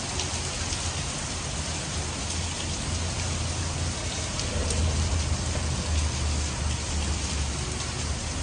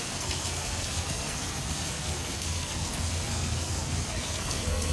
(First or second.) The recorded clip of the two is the first